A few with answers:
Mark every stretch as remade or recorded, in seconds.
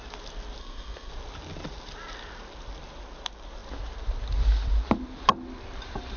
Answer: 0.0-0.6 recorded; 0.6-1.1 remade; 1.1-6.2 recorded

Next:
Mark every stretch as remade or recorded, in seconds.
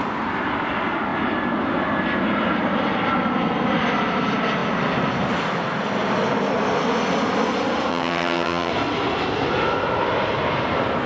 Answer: 0.0-7.9 recorded; 7.9-8.7 remade; 8.7-11.1 recorded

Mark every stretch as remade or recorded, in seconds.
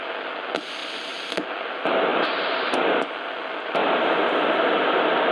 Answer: 0.0-0.8 recorded; 0.8-1.5 remade; 1.5-2.1 recorded; 2.1-3.0 remade; 3.0-3.8 recorded; 3.8-4.5 remade; 4.5-5.3 recorded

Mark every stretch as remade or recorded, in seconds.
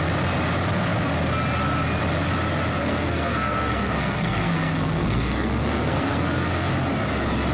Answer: 0.0-2.8 recorded; 2.8-6.7 remade; 6.7-7.5 recorded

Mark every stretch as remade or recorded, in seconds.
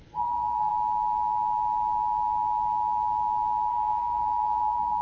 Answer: 0.0-0.7 remade; 0.7-3.7 recorded; 3.7-5.0 remade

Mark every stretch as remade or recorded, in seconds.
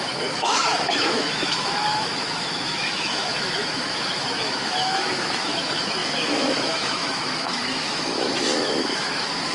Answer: 0.0-9.5 remade